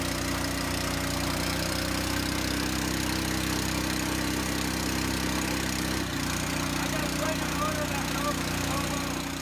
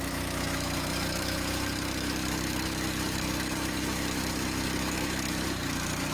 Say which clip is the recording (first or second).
first